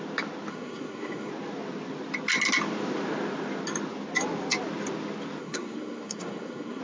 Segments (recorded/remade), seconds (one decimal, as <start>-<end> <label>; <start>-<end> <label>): 0.0-0.5 recorded; 0.5-1.3 remade; 1.3-5.4 recorded; 5.4-6.8 remade